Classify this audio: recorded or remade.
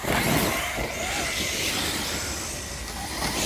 recorded